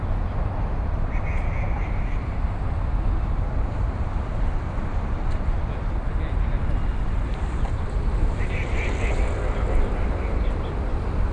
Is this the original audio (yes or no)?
yes